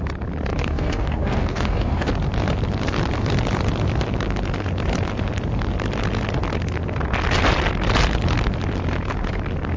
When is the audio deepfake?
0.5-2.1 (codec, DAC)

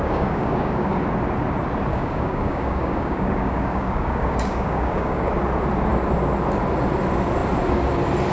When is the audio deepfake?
0.0-1.0 (codec, DAC); 1.9-5.3

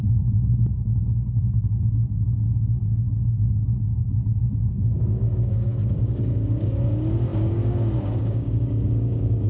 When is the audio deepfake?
0.0-4.0 (codec, DAC); 4.7-9.5

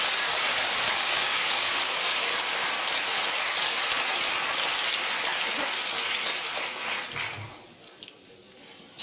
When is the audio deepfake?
0.5-2.7 (codec, DAC)

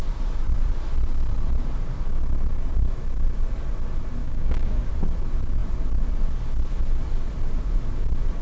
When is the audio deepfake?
4.2-4.9 (codec, DAC)

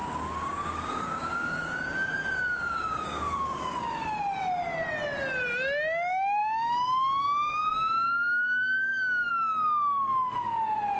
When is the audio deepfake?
0.0-4.2 (codec, DAC); 6.4-9.3

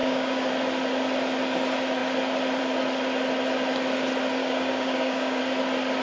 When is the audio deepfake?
0.0-0.5 (codec, DAC); 4.4-5.4